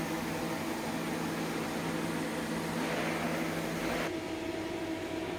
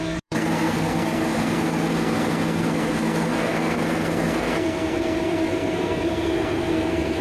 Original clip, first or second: first